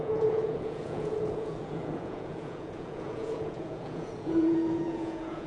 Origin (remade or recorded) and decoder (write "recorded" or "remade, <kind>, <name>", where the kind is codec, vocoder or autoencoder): remade, vocoder, Vocos